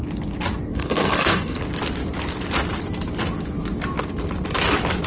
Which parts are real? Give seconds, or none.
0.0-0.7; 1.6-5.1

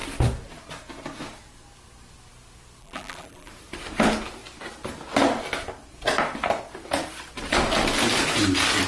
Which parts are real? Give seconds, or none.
0.0-2.8; 3.5-8.9

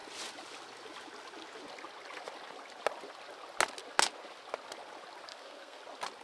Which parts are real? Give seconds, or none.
0.0-5.3; 5.8-6.2

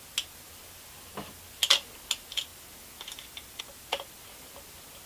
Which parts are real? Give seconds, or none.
0.0-5.1

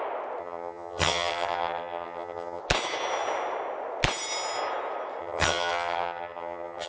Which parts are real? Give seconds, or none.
0.0-0.4; 2.6-5.2

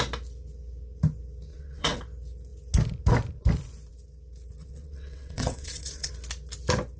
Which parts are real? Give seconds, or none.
0.0-1.5; 2.0-4.6; 6.1-7.0